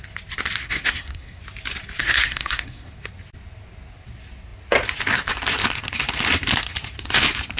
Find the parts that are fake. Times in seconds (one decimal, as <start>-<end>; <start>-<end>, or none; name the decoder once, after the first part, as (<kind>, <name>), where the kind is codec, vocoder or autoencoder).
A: 0.6-1.4 (codec, SNAC); 2.0-2.9